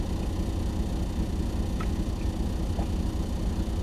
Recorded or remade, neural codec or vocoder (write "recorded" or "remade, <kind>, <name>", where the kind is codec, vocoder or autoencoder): recorded